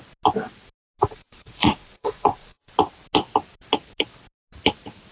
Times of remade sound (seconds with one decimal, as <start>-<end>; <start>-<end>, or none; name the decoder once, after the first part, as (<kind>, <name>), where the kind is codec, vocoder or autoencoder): 1.0-2.7 (vocoder, Vocos)